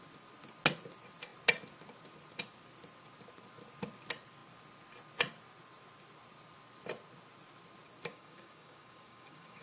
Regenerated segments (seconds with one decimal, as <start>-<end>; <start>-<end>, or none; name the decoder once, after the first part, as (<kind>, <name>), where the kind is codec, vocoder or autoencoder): 8.1-9.6 (codec, DAC)